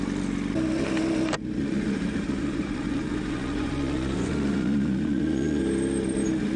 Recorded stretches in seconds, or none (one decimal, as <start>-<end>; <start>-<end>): 0.0-1.6; 5.6-6.6